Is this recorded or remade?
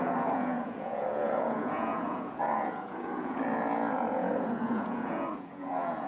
remade